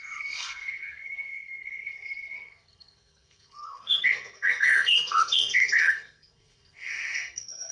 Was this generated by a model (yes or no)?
yes